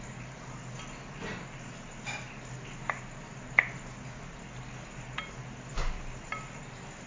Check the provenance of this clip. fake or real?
real